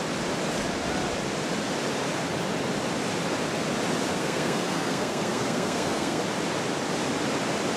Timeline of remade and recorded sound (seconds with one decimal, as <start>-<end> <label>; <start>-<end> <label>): 0.0-4.1 recorded; 4.1-6.2 remade; 6.2-7.8 recorded